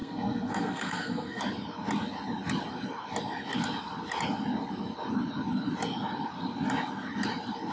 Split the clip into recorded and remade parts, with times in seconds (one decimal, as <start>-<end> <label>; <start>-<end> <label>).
0.0-1.4 remade; 1.4-7.7 recorded